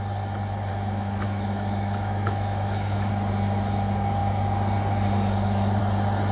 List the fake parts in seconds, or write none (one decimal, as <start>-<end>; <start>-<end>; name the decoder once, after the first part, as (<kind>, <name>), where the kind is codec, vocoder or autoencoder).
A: 0.7-3.1 (autoencoder, DAC-VAE)